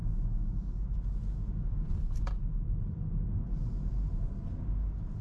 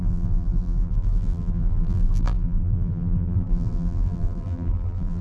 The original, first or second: first